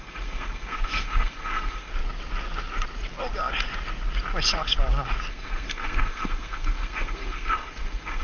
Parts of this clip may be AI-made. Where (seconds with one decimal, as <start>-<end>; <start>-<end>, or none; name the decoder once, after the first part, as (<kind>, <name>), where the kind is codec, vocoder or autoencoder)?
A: 0.0-1.9 (codec, SNAC); 5.3-8.2